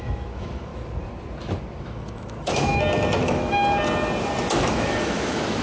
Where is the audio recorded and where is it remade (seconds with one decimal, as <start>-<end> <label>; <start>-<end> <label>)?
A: 0.0-0.7 remade; 0.7-1.8 recorded; 1.8-2.7 remade; 2.7-3.2 recorded; 3.2-3.6 remade; 3.6-4.5 recorded; 4.5-5.6 remade